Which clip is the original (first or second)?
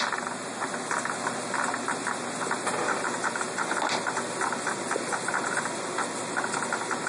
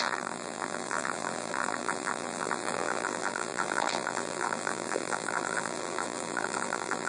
first